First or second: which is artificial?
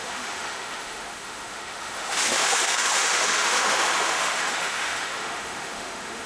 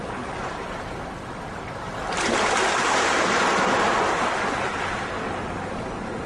first